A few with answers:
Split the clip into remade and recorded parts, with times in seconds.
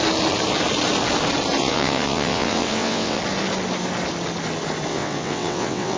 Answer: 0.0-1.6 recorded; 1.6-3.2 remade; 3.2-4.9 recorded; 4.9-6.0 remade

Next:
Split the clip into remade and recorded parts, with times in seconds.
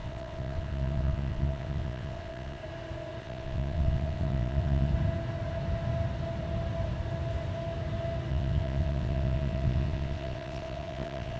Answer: 0.0-2.6 remade; 2.6-3.2 recorded; 3.2-4.9 remade; 4.9-8.3 recorded; 8.3-11.4 remade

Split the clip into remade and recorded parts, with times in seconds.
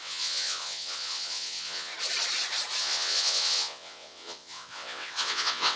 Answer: 0.0-1.9 remade; 1.9-2.8 recorded; 2.8-5.8 remade